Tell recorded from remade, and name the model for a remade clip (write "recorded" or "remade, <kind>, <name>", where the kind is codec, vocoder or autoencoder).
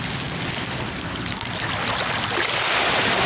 recorded